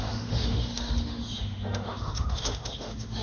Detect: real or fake fake